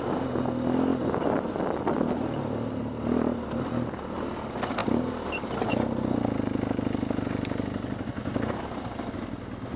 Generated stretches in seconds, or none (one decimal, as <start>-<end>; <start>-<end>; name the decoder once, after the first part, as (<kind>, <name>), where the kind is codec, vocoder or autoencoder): none